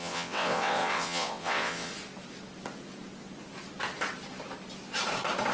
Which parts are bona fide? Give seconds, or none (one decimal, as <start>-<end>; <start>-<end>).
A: 1.9-5.5

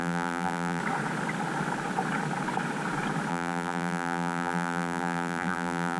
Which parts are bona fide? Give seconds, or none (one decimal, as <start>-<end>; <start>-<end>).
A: 0.8-3.3

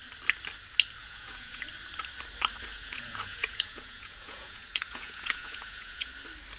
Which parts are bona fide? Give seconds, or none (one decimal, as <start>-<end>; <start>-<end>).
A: 0.0-1.0; 1.6-2.7; 6.1-6.6

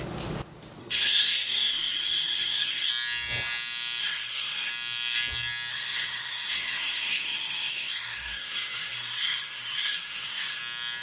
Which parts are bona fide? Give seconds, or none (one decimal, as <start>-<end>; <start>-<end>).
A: 0.0-0.8; 2.9-4.0; 4.7-5.7; 10.6-11.0

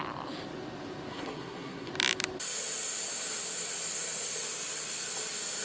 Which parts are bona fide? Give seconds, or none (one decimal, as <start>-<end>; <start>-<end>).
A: 0.0-1.1; 1.9-5.6